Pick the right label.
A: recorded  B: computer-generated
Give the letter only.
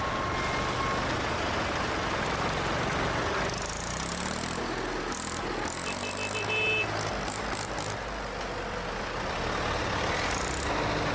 A